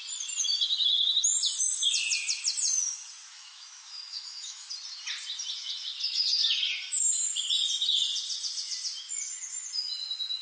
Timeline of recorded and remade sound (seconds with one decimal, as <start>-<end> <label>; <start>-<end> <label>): 0.0-3.3 recorded; 3.3-4.7 remade; 4.7-10.4 recorded